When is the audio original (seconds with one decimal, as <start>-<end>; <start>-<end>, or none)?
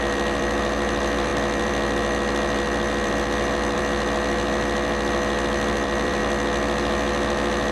6.2-7.7